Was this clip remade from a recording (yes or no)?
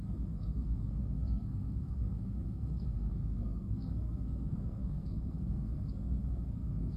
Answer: yes